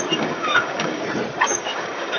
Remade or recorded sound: remade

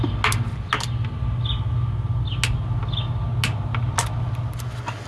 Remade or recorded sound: recorded